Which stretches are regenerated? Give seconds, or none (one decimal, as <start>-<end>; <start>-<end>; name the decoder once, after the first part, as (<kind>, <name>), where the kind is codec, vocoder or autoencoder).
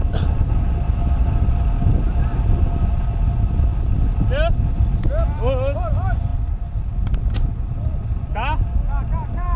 none